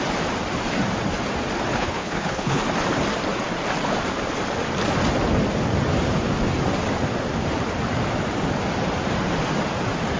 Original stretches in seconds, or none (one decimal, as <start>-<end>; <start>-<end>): 0.0-1.7; 2.6-10.2